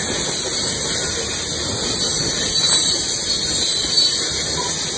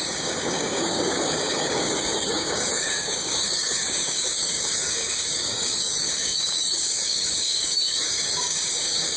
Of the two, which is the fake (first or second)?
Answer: second